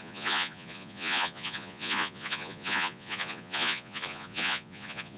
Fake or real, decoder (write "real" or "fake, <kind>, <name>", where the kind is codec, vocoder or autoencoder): fake, vocoder, Vocos